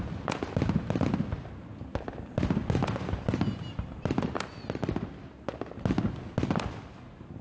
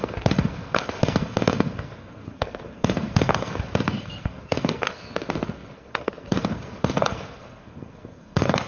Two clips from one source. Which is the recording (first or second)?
first